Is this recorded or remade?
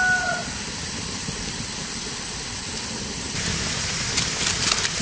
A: recorded